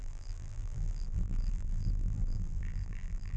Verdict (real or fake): fake